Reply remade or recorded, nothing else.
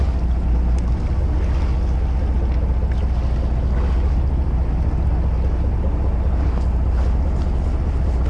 recorded